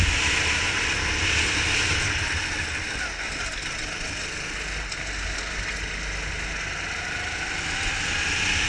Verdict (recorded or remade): recorded